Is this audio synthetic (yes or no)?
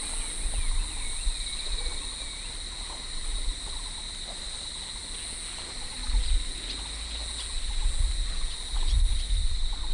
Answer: no